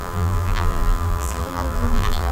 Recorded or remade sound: remade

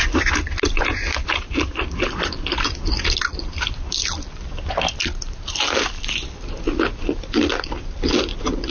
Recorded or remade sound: remade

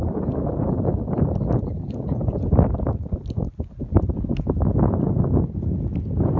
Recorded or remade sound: recorded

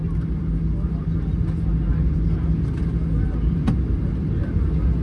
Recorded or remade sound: recorded